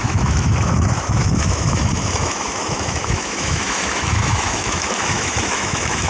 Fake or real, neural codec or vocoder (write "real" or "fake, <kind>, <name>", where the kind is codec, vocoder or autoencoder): fake, autoencoder, DAC-VAE